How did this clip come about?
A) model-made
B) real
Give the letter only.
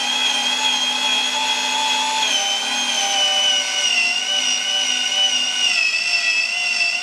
B